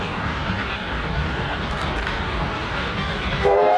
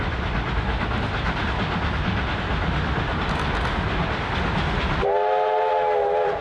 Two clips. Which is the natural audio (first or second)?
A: second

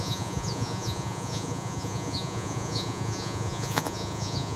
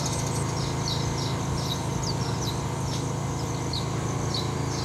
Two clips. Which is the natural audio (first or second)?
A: second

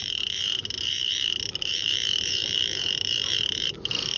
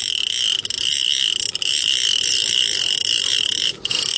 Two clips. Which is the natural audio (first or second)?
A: second